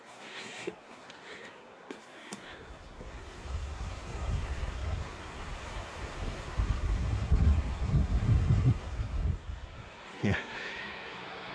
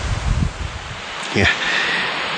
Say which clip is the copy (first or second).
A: first